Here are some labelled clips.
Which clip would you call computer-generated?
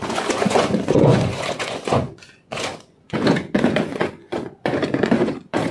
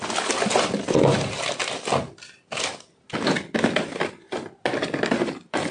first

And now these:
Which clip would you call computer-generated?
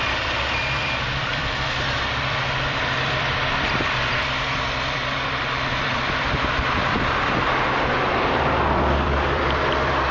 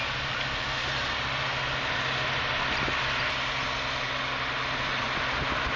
first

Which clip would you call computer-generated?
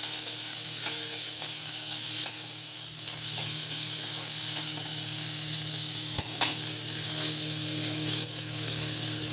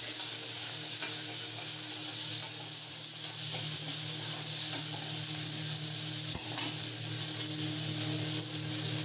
first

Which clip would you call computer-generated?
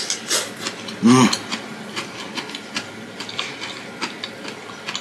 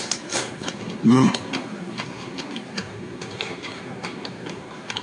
second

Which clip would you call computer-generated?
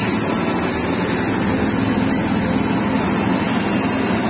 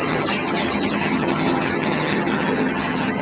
second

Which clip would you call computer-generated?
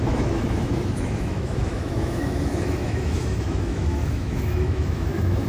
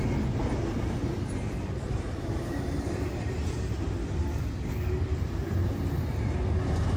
first